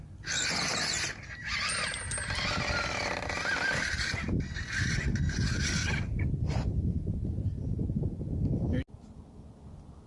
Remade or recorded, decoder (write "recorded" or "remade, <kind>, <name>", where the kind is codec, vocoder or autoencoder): recorded